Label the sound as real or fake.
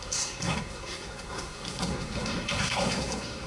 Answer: fake